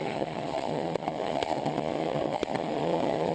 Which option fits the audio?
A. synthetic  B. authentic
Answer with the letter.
A